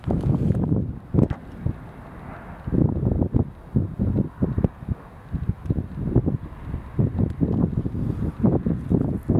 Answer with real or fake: real